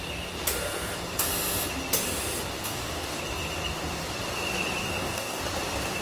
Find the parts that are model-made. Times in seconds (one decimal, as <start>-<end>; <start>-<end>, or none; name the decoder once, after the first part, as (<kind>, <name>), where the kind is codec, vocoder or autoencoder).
2.6-3.2 (codec, DAC); 4.8-5.4